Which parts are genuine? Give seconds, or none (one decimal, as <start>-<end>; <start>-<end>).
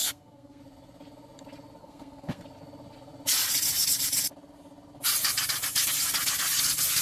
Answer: 0.6-1.8; 2.4-7.0